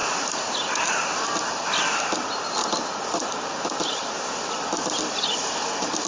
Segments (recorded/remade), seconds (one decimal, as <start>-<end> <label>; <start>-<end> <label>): 0.0-6.1 recorded

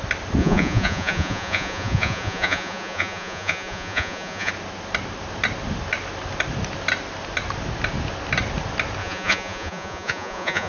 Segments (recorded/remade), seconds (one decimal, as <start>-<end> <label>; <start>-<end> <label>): 0.0-0.4 recorded; 0.4-4.5 remade; 4.5-9.0 recorded; 9.0-10.7 remade

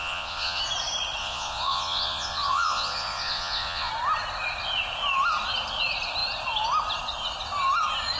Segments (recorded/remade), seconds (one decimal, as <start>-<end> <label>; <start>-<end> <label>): 0.0-0.6 remade; 0.6-1.2 recorded; 1.2-3.9 remade; 3.9-8.2 recorded

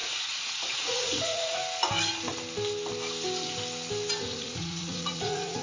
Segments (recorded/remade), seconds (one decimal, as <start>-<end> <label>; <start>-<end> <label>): 0.0-1.6 remade; 1.6-4.2 recorded; 4.2-5.6 remade

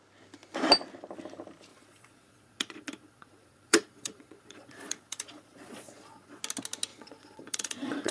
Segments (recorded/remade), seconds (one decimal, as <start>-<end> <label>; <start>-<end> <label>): 0.0-1.7 recorded; 1.7-6.4 remade; 6.4-6.9 recorded; 6.9-8.1 remade

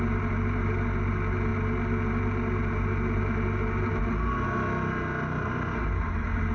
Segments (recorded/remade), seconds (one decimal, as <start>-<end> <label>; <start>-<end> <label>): 0.0-6.5 recorded

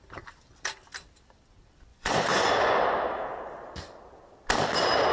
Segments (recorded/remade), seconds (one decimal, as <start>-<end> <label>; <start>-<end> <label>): 0.0-1.9 recorded; 1.9-2.8 remade; 2.8-5.1 recorded